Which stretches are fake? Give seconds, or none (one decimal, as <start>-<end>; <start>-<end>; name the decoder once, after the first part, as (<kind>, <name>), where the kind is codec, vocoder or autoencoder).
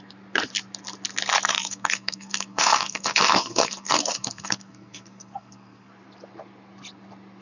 1.5-5.9 (codec, SNAC)